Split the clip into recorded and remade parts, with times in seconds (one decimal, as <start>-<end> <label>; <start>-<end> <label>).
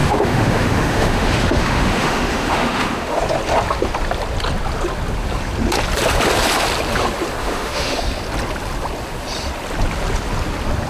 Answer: 0.0-3.2 remade; 3.2-7.4 recorded; 7.4-8.0 remade; 8.0-10.9 recorded